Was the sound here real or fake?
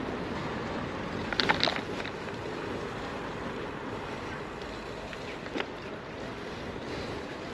real